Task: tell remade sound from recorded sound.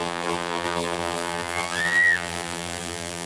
remade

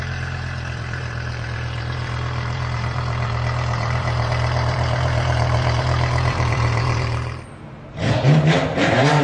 remade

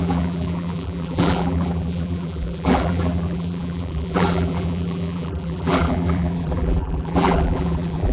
remade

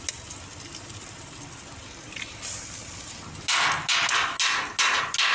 recorded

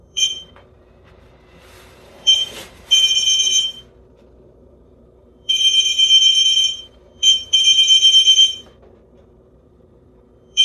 remade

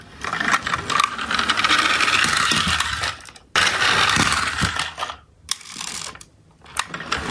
recorded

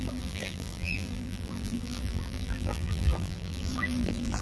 remade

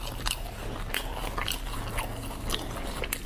recorded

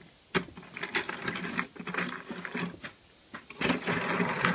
recorded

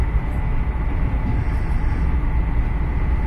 recorded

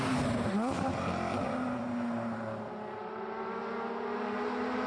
recorded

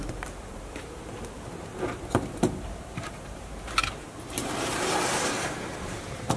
remade